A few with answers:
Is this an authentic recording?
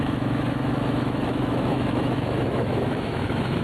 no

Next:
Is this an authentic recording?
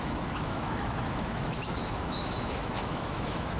no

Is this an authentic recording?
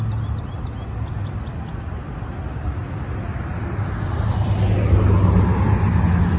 yes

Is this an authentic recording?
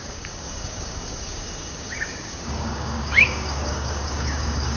no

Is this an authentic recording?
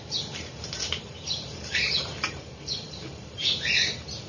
no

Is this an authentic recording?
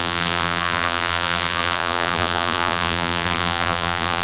no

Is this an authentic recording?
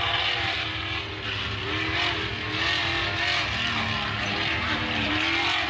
yes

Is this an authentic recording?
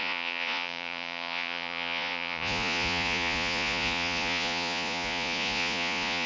no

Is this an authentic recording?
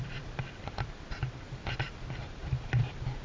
no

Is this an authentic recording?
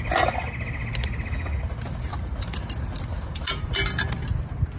yes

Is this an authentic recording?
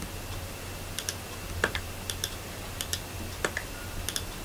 yes